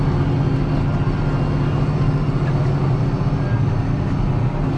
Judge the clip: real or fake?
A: real